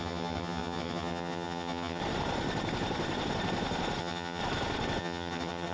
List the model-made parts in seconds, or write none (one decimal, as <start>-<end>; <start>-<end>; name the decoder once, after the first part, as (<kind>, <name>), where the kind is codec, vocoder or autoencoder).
0.0-2.0 (vocoder, HiFi-GAN); 4.0-4.4; 5.0-5.7